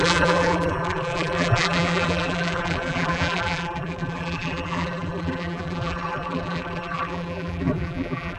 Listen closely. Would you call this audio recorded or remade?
remade